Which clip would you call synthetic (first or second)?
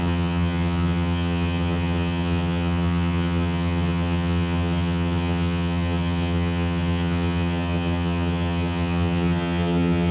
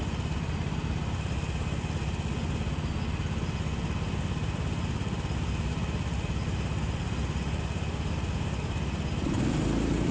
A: first